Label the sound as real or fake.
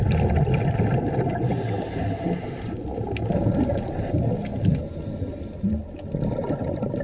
real